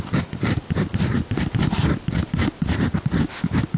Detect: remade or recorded recorded